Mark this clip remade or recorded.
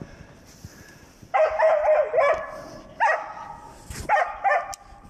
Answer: recorded